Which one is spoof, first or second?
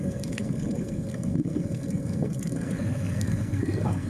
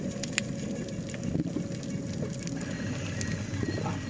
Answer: first